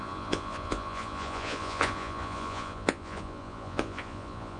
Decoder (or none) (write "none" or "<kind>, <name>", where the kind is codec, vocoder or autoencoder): vocoder, Vocos